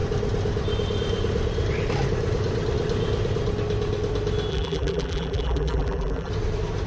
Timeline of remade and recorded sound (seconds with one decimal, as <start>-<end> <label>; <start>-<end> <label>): 0.0-4.5 recorded; 4.5-6.3 remade; 6.3-6.9 recorded